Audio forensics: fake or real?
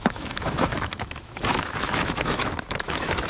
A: fake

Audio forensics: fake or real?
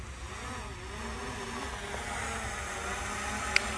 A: real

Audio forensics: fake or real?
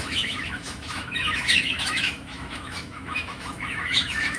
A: fake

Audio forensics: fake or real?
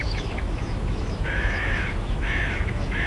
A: fake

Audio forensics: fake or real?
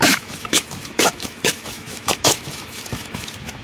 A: fake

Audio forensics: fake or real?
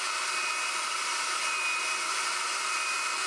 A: real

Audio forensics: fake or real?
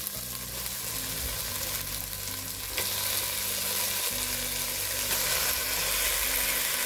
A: real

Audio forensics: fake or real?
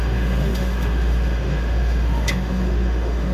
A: fake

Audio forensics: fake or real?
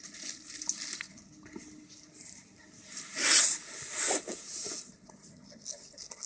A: real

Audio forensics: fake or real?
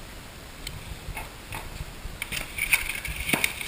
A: real